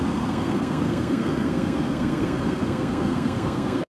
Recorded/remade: remade